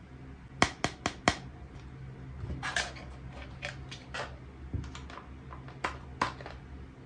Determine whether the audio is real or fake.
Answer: real